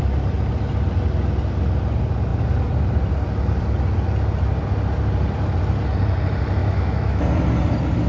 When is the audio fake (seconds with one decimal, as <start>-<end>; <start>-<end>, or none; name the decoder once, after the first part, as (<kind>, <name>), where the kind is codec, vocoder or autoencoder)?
6.6-7.2 (autoencoder, DAC-VAE)